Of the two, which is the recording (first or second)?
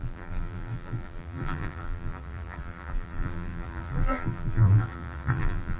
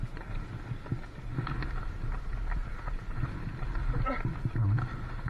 second